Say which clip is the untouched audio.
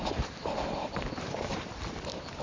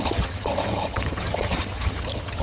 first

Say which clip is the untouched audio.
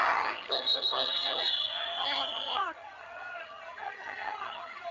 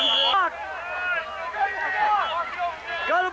second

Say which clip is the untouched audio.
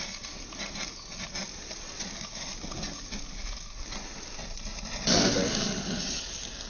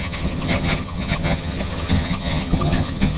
first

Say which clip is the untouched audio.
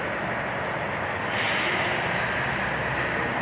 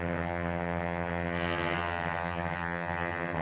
first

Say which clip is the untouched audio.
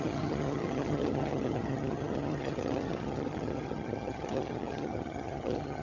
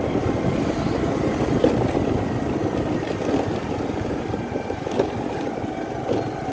second